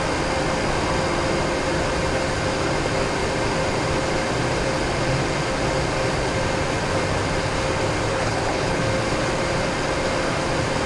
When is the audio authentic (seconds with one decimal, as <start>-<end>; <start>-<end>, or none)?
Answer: 0.0-8.1; 8.8-10.9